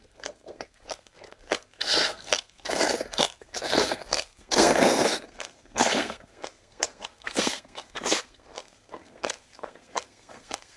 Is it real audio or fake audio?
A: fake